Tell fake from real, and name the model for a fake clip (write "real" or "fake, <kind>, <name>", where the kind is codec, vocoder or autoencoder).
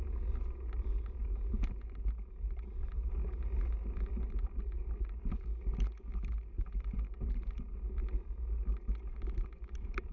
real